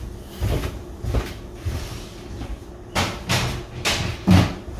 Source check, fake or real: real